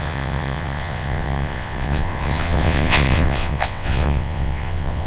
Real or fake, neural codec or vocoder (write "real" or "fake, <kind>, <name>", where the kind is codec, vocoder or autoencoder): fake, vocoder, WaveNeXt